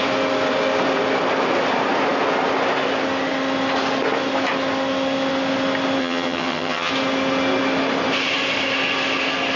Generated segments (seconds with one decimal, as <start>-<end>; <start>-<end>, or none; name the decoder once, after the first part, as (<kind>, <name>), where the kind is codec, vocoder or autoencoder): 6.0-6.9 (vocoder, HiFi-GAN)